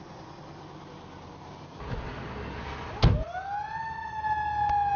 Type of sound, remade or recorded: recorded